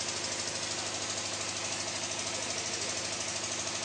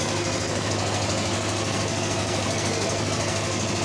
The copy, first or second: second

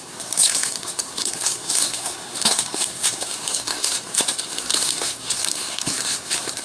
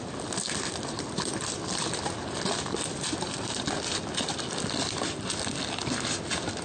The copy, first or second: first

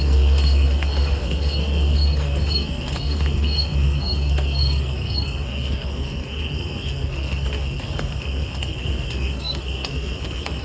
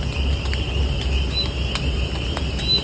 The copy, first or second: first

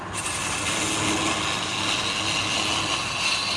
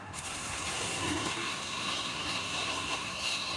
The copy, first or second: second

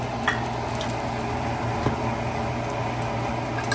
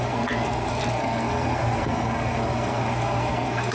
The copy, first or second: second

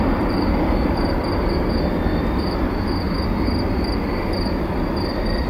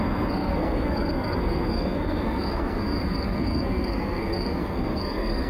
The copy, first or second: second